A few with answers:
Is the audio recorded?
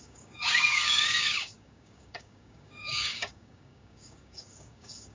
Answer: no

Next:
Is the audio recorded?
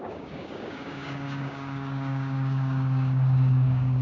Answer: no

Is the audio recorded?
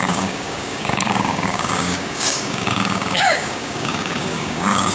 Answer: no